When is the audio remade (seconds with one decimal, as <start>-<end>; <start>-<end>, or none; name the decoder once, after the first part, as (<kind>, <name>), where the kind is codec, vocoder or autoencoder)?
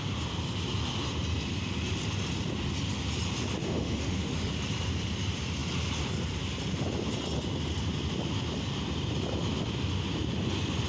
3.6-4.5 (autoencoder, DAC-VAE)